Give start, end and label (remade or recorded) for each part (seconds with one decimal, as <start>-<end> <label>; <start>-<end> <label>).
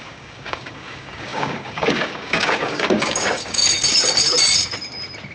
0.0-3.6 remade; 3.6-5.3 recorded